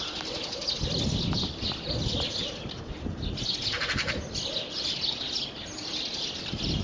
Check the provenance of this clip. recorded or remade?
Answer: recorded